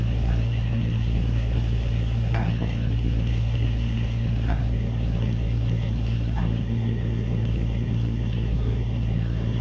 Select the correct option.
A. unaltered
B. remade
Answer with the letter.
B